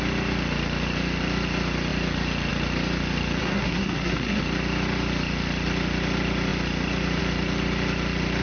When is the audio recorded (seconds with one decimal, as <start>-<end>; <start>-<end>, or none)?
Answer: 0.0-3.4; 4.4-8.4